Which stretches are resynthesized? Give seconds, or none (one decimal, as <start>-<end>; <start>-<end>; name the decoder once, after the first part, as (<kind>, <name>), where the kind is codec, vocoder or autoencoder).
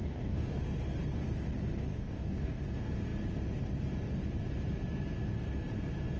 0.0-0.6 (codec, DAC); 1.9-2.6